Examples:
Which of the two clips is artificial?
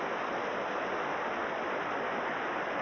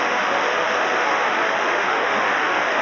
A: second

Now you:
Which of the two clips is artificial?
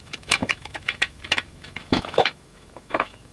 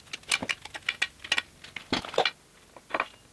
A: first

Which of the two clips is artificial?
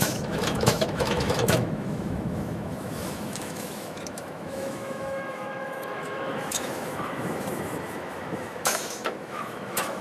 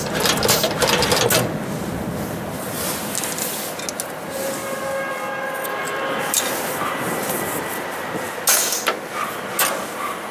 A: first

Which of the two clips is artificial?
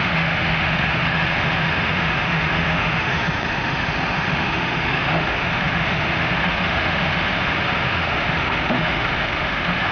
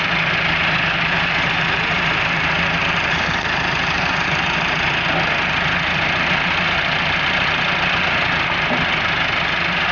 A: first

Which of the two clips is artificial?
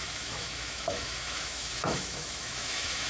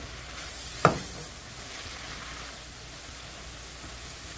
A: first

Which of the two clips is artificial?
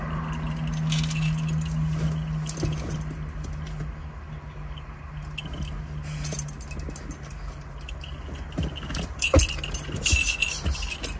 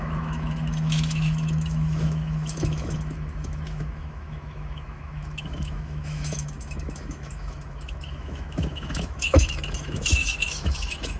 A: second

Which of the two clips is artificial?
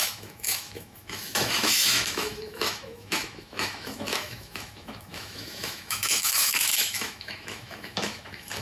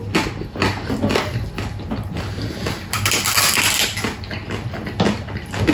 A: first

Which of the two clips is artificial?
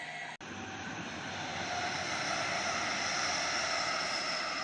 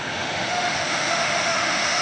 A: second